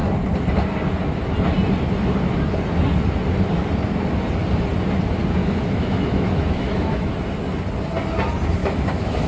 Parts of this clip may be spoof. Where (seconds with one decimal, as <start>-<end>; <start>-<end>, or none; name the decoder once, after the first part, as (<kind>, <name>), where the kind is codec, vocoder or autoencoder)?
5.4-7.1 (autoencoder, DAC-VAE); 8.6-9.3